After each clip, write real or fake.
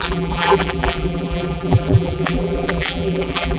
fake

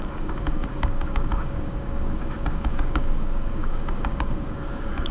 fake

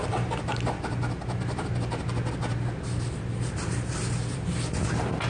real